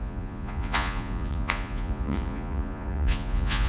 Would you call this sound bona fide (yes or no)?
no